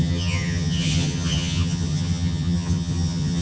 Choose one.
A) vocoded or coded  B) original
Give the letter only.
A